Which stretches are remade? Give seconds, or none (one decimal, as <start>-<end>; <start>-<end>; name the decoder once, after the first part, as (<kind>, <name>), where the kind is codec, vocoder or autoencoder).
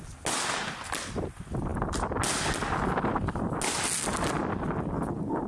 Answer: none